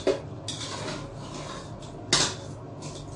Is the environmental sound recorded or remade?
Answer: recorded